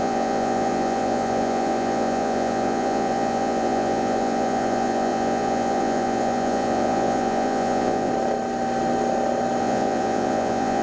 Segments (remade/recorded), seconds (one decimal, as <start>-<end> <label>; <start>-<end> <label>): 0.0-8.1 remade; 8.1-9.6 recorded; 9.6-10.8 remade

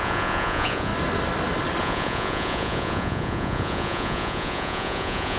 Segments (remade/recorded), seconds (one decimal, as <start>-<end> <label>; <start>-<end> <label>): 0.0-0.9 remade; 0.9-1.8 recorded; 1.8-5.4 remade

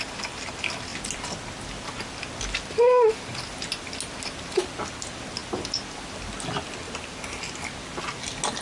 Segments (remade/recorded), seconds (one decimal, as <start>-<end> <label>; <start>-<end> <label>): 0.0-8.6 recorded

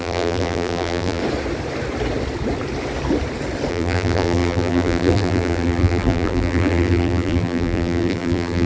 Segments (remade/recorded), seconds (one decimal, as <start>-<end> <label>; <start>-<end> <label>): 0.0-1.2 remade; 1.2-3.7 recorded; 3.7-8.7 remade

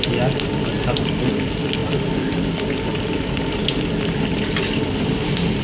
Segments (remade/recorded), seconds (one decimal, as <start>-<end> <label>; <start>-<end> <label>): 0.0-5.6 recorded